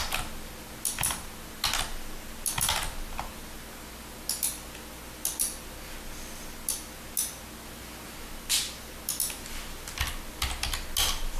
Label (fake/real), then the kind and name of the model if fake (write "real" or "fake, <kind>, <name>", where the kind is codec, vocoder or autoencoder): real